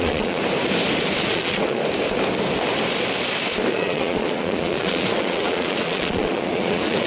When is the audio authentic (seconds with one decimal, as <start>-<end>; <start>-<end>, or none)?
0.4-1.2; 1.8-3.7

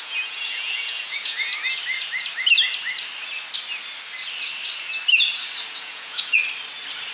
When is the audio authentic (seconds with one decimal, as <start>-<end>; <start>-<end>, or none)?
1.5-5.8; 6.4-7.1

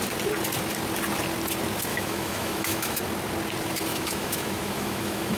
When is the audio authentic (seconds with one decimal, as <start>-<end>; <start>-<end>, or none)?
0.0-1.9; 3.0-3.9

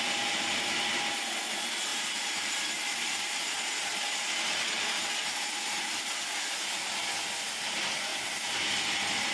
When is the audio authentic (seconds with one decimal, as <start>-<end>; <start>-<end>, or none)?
0.0-1.9; 6.0-8.1

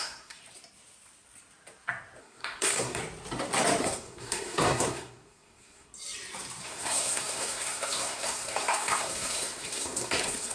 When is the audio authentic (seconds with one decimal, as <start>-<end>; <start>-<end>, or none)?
0.4-2.2; 3.0-3.8; 5.9-6.6